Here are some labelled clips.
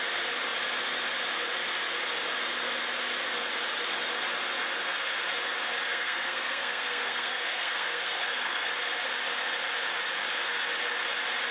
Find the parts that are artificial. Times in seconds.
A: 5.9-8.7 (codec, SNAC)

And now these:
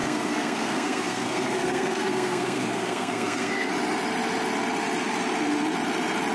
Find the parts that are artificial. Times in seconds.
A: 0.0-3.7 (codec, SNAC)

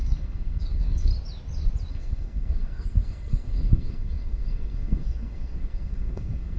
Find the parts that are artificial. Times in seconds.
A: 0.0-1.1 (codec, SNAC); 1.9-6.6

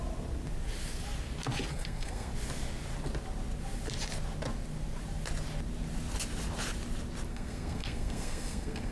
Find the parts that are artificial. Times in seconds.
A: 1.7-2.3 (codec, SNAC); 7.3-8.9

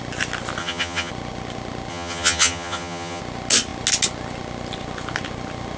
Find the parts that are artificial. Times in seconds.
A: 0.6-1.1 (vocoder, HiFi-GAN); 1.9-3.2

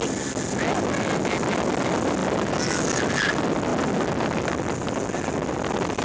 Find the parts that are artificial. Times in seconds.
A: none

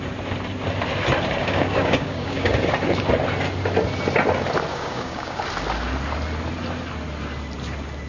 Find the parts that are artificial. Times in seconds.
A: 1.4-2.5 (codec, DAC); 4.7-5.4